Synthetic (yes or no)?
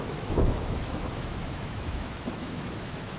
yes